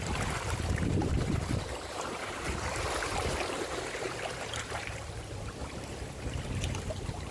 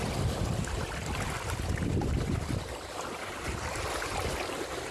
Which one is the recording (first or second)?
second